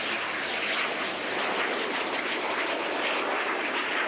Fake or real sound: real